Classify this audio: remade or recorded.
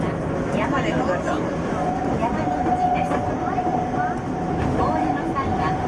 recorded